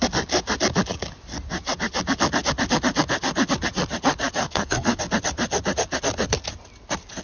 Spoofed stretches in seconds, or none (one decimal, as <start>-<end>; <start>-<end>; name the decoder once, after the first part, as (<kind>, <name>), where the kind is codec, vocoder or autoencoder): 4.4-5.0 (codec, SNAC)